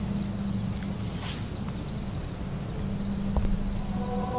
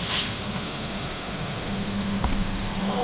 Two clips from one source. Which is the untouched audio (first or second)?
first